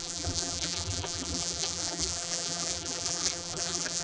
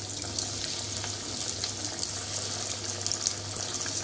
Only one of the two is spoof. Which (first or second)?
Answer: first